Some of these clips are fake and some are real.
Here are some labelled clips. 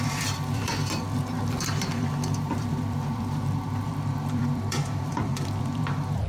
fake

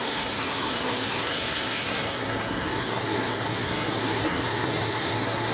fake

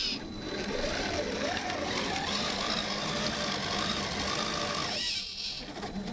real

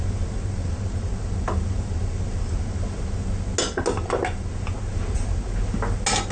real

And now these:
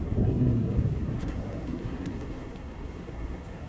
fake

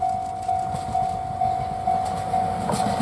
real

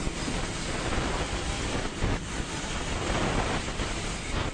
real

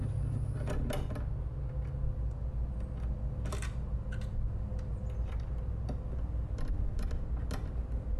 real